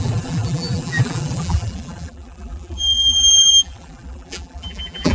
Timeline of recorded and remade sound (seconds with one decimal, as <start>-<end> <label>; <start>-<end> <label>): 0.0-5.1 remade